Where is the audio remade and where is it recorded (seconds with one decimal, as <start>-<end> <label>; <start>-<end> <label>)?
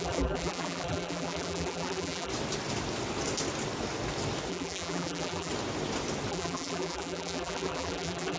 0.0-2.3 remade; 2.3-4.5 recorded; 4.5-5.5 remade; 5.5-6.3 recorded; 6.3-8.4 remade